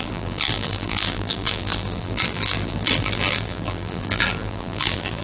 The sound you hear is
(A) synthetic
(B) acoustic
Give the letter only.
A